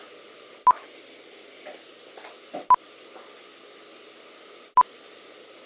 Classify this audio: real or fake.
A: real